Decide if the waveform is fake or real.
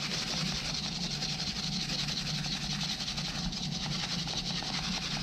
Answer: real